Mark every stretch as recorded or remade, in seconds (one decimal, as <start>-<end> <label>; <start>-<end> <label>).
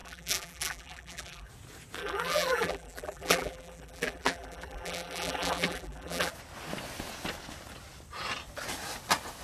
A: 0.0-1.5 remade; 1.5-2.0 recorded; 2.0-6.3 remade; 6.3-9.4 recorded